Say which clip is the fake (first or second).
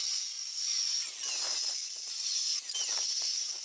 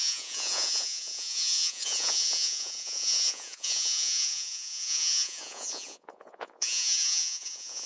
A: second